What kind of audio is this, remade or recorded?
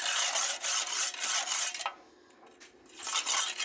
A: recorded